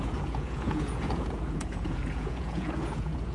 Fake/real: fake